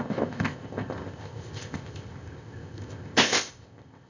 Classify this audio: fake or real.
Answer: fake